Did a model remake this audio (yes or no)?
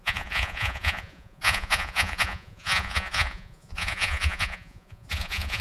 yes